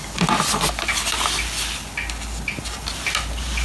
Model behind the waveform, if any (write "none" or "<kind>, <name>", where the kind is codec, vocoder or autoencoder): none